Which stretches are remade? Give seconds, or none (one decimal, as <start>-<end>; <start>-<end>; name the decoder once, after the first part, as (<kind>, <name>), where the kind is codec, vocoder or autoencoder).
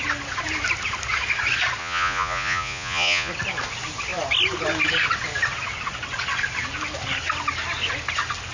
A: 1.8-3.3 (vocoder, Vocos)